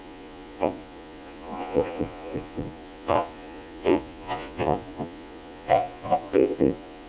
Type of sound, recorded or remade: remade